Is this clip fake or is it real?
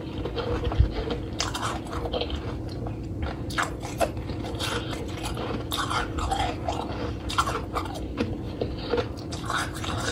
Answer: real